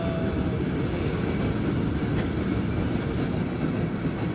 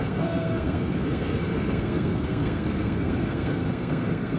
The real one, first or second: first